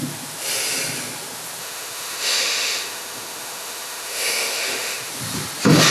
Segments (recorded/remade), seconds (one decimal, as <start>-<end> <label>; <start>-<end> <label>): 0.0-1.6 recorded; 1.6-5.1 remade; 5.1-5.9 recorded